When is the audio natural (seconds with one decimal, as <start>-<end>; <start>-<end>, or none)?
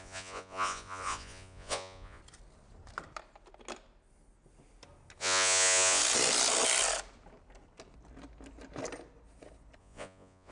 2.2-5.2; 6.0-9.8